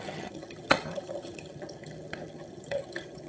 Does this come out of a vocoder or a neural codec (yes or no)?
yes